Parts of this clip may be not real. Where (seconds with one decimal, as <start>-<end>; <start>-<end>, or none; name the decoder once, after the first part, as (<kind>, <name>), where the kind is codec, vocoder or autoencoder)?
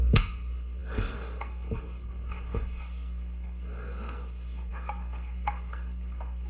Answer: 0.0-6.5 (codec, SNAC)